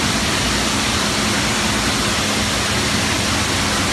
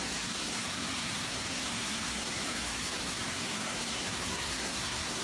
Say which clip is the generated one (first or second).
second